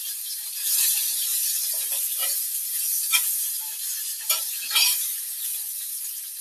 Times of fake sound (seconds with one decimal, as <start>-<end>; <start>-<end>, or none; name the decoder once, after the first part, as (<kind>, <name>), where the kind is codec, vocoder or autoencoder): 0.0-1.3 (vocoder, BigVGAN v2); 4.4-6.4

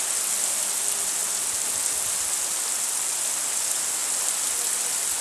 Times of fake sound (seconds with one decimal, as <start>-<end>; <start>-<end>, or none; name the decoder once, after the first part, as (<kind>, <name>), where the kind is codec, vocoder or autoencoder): none